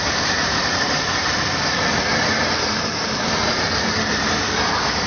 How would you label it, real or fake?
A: fake